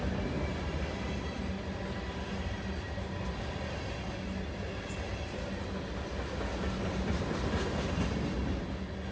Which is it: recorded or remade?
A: recorded